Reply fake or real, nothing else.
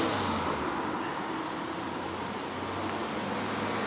real